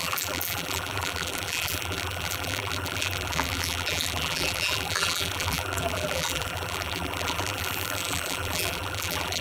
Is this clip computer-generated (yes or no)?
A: yes